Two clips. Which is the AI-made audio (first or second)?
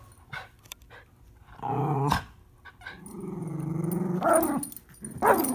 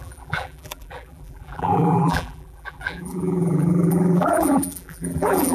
second